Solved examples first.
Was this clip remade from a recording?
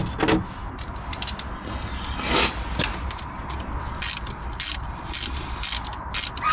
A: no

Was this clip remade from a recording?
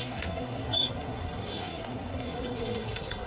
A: yes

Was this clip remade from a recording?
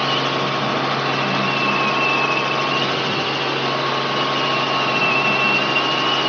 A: no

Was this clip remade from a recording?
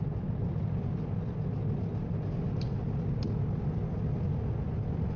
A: no